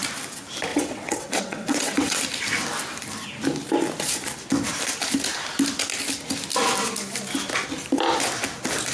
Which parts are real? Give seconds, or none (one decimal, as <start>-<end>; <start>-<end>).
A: 0.0-0.7; 2.2-8.9